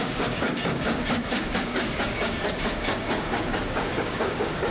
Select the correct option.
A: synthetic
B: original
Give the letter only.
A